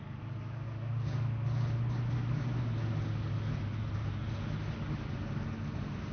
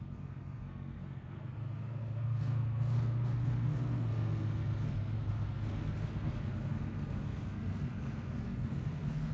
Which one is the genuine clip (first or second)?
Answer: first